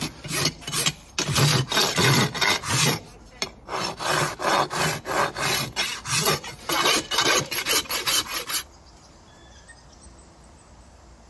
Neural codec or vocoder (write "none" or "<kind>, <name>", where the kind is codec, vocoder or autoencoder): none